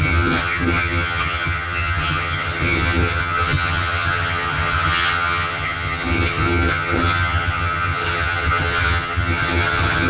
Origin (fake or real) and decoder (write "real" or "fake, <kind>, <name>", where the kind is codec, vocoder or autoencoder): fake, vocoder, HiFi-GAN